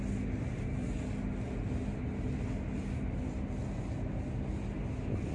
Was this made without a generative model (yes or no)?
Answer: yes